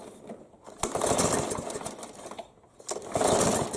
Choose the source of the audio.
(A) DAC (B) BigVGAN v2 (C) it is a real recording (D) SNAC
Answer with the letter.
C